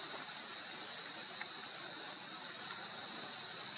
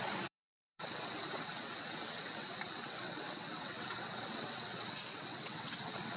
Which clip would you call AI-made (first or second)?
second